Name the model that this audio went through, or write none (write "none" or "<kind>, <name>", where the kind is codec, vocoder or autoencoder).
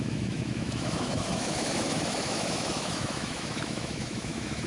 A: autoencoder, DAC-VAE